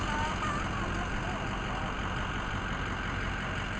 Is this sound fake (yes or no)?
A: yes